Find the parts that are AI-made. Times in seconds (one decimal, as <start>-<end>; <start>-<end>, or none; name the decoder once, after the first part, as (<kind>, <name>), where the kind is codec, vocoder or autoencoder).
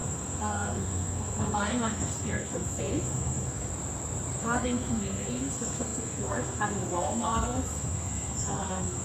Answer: 0.0-3.7 (codec, SNAC); 4.4-9.0